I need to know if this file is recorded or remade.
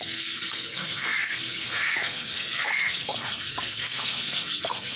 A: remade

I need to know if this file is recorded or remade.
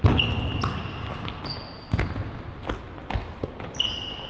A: recorded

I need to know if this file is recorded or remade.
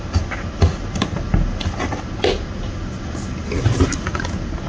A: recorded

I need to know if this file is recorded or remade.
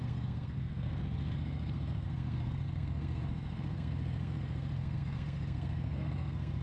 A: remade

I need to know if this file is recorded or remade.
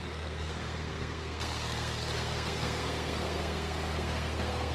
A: remade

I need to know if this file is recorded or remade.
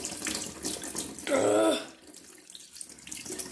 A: recorded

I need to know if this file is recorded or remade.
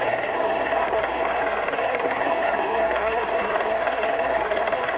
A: remade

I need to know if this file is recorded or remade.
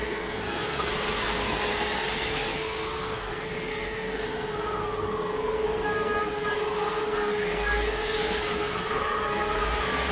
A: remade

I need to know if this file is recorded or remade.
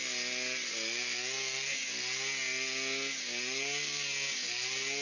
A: recorded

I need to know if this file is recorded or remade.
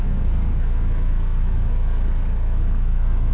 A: remade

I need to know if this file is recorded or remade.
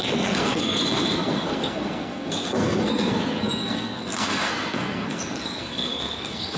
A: remade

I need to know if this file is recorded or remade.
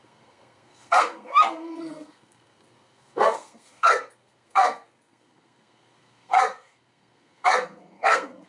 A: remade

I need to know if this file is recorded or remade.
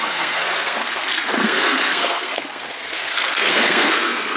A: remade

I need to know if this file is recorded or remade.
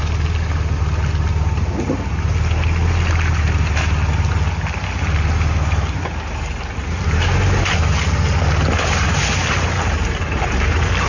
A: recorded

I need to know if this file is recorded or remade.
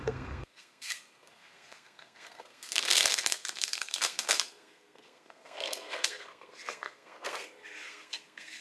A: remade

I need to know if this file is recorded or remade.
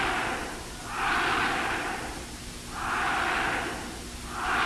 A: recorded